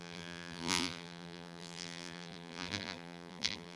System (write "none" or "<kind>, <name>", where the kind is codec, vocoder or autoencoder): vocoder, BigVGAN v2